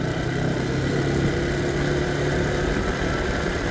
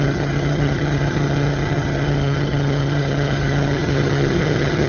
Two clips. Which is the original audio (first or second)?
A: first